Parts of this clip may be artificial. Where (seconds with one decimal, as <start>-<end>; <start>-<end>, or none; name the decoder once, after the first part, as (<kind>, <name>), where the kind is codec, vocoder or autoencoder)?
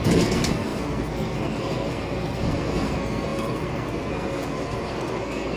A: 0.0-5.6 (codec, SNAC)